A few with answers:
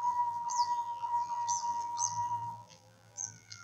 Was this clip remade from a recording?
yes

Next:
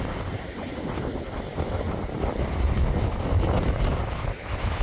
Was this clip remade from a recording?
no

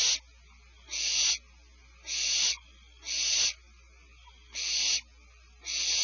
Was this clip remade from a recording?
no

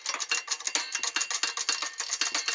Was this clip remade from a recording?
no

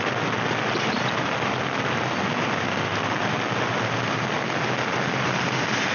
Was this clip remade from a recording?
no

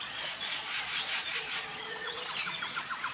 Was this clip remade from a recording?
yes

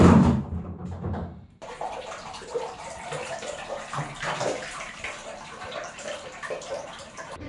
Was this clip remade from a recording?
yes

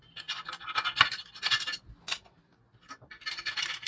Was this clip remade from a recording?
no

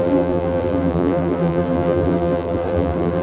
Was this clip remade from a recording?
yes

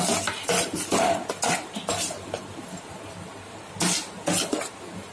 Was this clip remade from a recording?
no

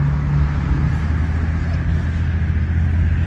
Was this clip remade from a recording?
no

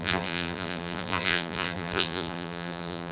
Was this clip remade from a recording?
yes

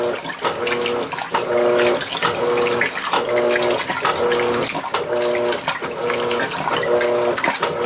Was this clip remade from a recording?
no